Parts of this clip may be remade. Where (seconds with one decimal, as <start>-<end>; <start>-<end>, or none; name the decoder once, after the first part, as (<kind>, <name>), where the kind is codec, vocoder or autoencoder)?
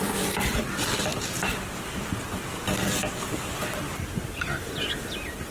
none